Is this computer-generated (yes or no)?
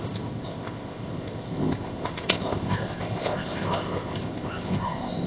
yes